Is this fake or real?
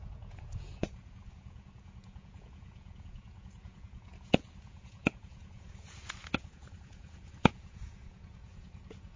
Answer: fake